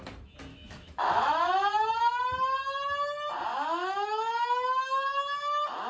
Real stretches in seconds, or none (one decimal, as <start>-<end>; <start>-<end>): 0.0-0.5; 2.2-3.5